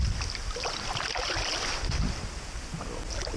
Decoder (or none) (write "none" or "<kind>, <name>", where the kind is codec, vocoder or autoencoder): none